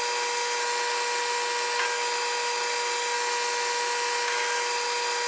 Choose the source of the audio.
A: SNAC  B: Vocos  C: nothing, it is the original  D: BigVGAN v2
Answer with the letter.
C